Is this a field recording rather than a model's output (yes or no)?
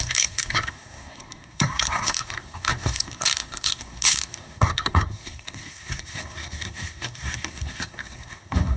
no